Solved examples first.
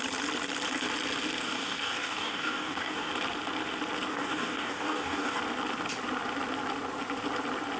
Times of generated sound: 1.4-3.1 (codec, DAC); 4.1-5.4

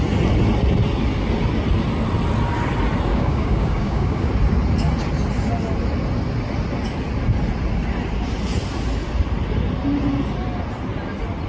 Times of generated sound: 3.1-4.3 (codec, DAC)

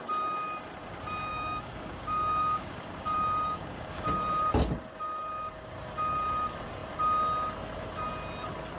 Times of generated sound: 1.3-4.1 (codec, DAC)

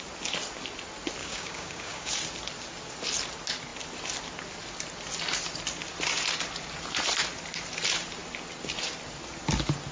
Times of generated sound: 1.2-2.1 (codec, DAC)

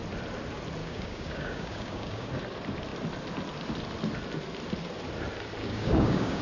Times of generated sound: 0.8-2.3 (codec, DAC); 5.6-6.4

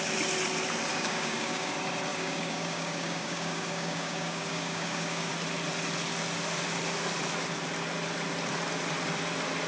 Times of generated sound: 0.9-1.7 (codec, DAC); 2.1-5.3

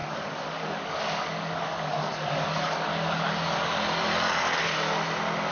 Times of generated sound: 0.0-3.3 (codec, DAC)

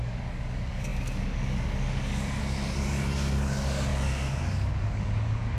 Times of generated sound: 0.0-5.6 (codec, DAC)